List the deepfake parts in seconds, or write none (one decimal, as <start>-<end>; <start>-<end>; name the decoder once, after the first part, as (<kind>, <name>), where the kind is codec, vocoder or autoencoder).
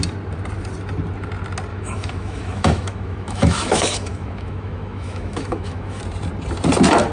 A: 1.7-6.0 (autoencoder, DAC-VAE)